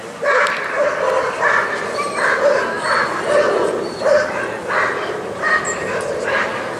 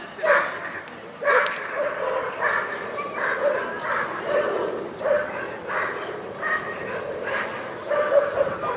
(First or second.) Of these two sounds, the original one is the first